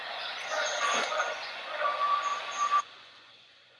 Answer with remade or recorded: remade